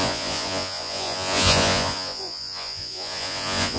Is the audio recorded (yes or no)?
no